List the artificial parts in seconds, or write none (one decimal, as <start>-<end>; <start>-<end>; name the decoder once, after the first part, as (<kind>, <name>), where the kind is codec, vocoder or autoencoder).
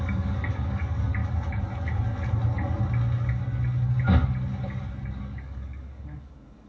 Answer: 0.0-1.2 (codec, DAC); 5.2-6.7